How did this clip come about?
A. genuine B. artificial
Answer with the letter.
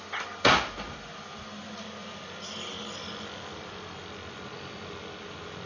A